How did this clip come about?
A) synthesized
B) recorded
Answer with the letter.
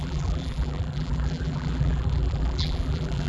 A